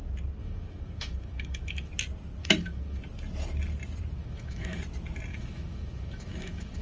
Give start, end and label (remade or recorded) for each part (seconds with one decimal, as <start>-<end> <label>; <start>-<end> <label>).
0.0-0.4 recorded; 0.4-1.9 remade; 1.9-2.4 recorded; 2.4-3.0 remade; 3.0-4.2 recorded; 4.2-4.8 remade; 4.8-5.3 recorded; 5.3-6.8 remade